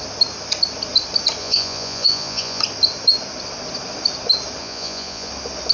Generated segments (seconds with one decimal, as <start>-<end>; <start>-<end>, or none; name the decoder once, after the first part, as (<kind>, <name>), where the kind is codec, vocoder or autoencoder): 1.4-2.6 (vocoder, Vocos); 4.6-5.3